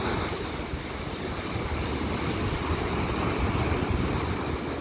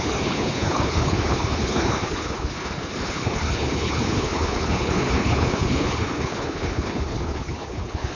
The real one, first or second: first